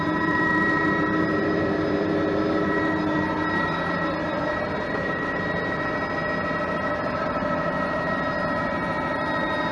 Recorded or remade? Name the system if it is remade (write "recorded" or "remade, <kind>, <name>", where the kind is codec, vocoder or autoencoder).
remade, vocoder, BigVGAN v2